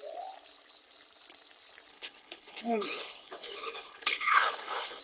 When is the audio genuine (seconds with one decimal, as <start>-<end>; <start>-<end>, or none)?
0.0-1.9